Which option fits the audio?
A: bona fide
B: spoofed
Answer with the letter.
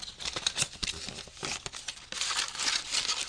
A